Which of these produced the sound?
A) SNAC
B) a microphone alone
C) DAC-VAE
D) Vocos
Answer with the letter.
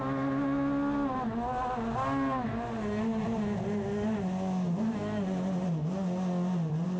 B